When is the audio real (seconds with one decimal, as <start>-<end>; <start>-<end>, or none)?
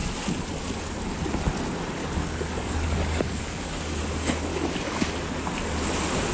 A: 0.0-2.0; 4.0-4.5; 5.1-6.3